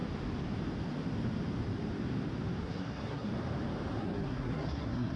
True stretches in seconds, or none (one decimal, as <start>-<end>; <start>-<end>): 0.0-2.6; 3.3-4.0

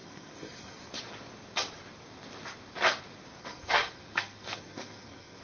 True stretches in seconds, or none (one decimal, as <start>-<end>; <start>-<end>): 0.9-3.4

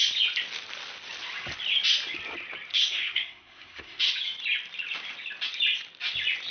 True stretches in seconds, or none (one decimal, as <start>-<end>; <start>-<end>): 0.0-2.7; 4.0-6.5

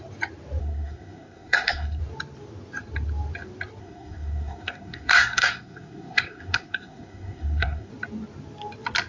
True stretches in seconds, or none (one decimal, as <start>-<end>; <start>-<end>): 0.0-0.6; 2.0-3.8; 7.9-9.1

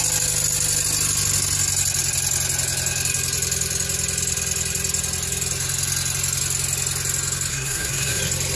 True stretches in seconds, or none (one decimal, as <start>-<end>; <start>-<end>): 0.0-7.5; 8.2-8.6

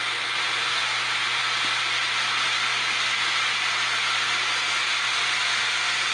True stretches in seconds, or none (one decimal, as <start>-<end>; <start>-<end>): 0.0-6.1